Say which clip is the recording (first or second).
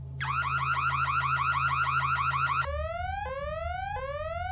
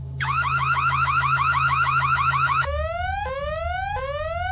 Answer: first